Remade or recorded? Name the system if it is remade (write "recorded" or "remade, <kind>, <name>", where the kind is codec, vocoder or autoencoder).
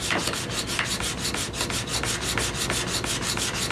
recorded